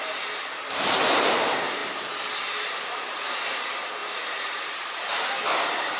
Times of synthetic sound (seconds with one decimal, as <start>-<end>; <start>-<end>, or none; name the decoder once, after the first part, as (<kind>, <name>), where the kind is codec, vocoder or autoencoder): 0.0-6.0 (vocoder, BigVGAN v2)